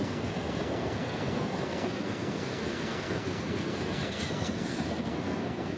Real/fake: fake